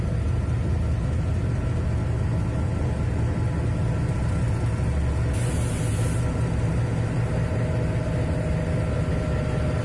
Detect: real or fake real